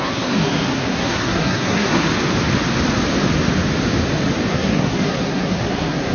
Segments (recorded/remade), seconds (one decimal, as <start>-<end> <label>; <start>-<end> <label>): 0.0-2.1 remade; 2.1-4.5 recorded; 4.5-6.1 remade